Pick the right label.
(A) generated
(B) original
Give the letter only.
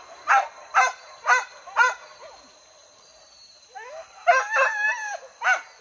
B